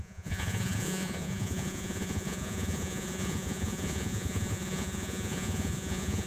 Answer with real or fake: fake